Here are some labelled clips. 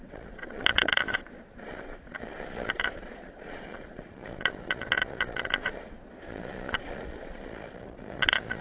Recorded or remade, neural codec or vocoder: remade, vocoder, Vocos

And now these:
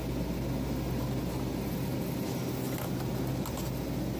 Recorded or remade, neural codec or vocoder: recorded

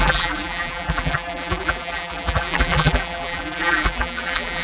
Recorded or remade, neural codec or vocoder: remade, vocoder, BigVGAN v2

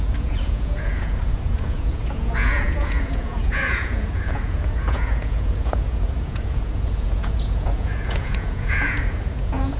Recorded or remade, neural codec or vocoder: remade, vocoder, Vocos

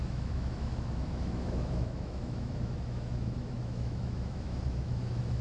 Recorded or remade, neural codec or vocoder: remade, autoencoder, DAC-VAE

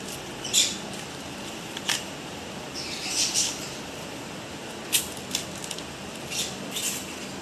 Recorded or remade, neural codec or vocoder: remade, vocoder, BigVGAN v2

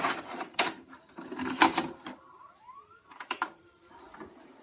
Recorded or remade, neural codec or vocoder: remade, vocoder, BigVGAN v2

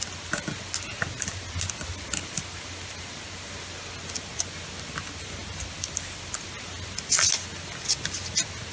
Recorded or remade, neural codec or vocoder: recorded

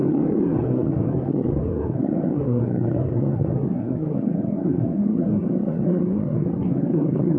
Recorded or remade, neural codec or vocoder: remade, codec, SNAC